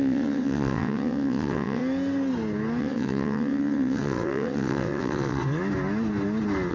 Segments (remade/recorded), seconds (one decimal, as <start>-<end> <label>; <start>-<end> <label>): 0.0-1.8 remade; 1.8-2.8 recorded; 2.8-5.4 remade; 5.4-6.7 recorded